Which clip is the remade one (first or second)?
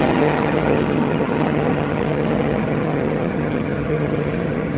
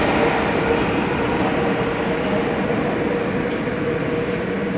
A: first